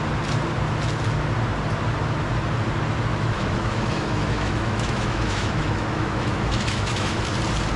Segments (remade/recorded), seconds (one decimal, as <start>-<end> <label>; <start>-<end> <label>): 0.0-3.1 recorded; 3.1-7.2 remade; 7.2-7.8 recorded